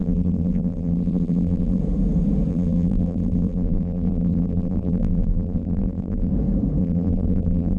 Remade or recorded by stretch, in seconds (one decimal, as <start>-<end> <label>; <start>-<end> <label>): 0.0-1.8 remade; 1.8-2.5 recorded; 2.5-6.3 remade; 6.3-6.8 recorded; 6.8-7.8 remade